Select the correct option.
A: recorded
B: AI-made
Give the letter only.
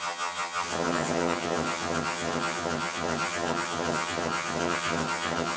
B